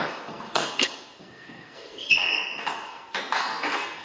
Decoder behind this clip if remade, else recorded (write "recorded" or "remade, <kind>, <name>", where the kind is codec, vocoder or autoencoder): remade, codec, SNAC